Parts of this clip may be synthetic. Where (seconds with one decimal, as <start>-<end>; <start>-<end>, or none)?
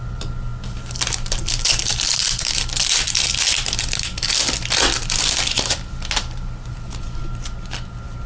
none